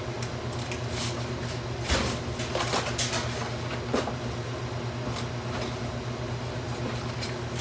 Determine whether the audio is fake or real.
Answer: real